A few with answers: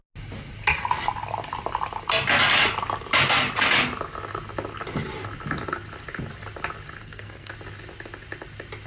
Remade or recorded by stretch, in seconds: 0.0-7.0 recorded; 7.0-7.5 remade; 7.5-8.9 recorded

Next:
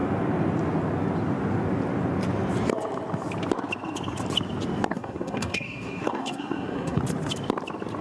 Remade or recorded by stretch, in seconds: 0.0-4.9 recorded; 4.9-7.0 remade; 7.0-8.0 recorded

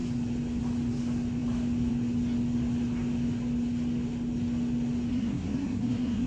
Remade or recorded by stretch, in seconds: 0.0-5.1 recorded; 5.1-6.3 remade

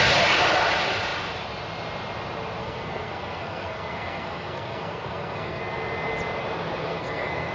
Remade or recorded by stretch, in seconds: 0.0-2.6 recorded; 2.6-5.6 remade; 5.6-6.8 recorded; 6.8-7.5 remade

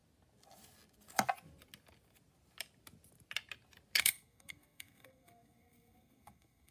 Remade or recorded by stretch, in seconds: 0.0-4.0 recorded; 4.0-6.7 remade

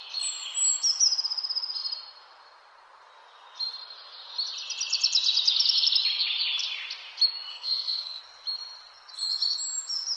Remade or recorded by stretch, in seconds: 0.0-7.5 recorded; 7.5-8.2 remade; 8.2-10.2 recorded

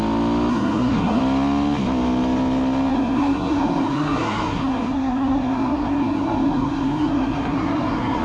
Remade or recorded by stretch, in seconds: 0.0-0.5 recorded; 0.5-1.2 remade; 1.2-2.9 recorded; 2.9-8.2 remade